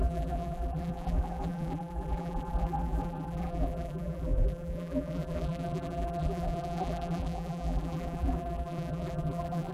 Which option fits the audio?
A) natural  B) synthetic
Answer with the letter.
B